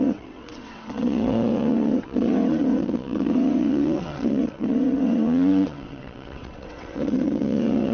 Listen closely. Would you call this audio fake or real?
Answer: fake